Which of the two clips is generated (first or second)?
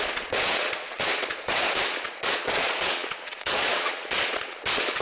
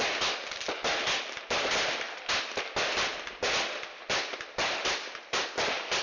first